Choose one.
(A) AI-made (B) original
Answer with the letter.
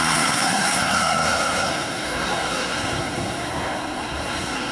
A